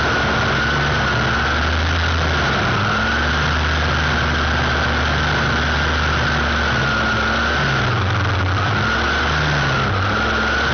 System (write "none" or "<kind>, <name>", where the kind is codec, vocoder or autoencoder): none